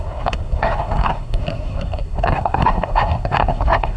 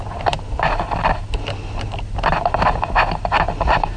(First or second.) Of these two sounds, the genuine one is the second